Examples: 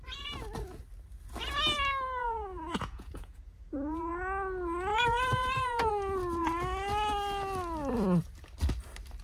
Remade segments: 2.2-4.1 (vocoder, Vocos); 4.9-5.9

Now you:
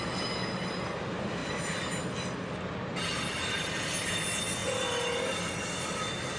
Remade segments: none